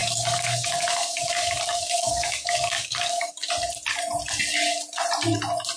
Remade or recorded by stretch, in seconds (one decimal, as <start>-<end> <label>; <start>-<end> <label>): 0.0-3.5 remade; 3.5-5.8 recorded